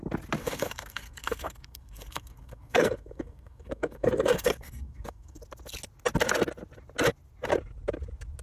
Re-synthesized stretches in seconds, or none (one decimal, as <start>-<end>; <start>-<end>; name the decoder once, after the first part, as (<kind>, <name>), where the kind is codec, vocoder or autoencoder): 0.4-5.4 (codec, SNAC)